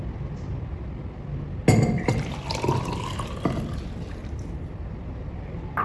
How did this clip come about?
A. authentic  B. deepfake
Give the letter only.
A